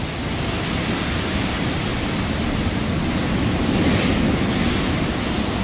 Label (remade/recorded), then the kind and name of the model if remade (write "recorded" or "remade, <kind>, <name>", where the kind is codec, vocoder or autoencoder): recorded